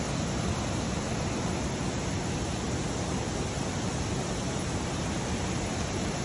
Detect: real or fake real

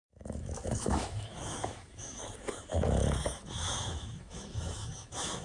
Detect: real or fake fake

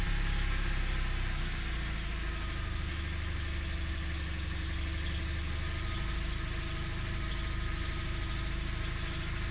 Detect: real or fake real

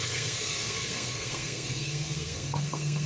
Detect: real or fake fake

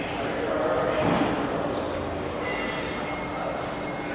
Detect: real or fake real